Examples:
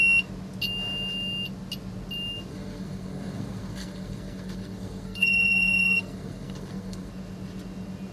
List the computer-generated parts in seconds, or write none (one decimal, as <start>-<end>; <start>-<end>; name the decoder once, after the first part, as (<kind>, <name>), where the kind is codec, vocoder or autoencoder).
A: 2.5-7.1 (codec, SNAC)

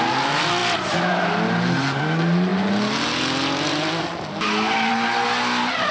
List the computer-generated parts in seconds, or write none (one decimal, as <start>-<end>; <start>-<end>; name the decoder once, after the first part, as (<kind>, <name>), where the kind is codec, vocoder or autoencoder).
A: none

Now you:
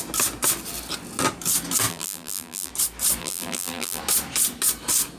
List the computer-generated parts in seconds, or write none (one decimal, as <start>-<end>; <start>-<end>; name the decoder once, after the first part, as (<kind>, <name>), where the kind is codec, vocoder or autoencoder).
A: 1.9-2.7 (vocoder, BigVGAN v2); 3.2-4.0

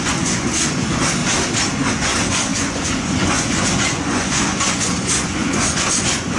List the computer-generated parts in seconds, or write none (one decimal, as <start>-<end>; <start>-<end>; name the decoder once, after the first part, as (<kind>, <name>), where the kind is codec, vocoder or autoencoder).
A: 0.0-1.2 (vocoder, Vocos); 1.9-6.4